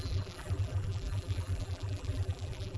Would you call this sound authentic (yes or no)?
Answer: no